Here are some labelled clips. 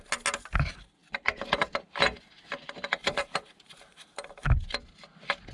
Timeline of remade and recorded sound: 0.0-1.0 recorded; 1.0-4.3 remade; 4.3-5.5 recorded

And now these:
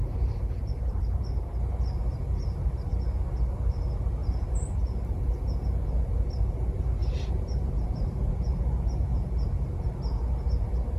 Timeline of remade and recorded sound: 0.0-1.4 remade; 1.4-7.0 recorded; 7.0-8.3 remade; 8.3-11.0 recorded